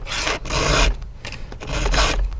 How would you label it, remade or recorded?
remade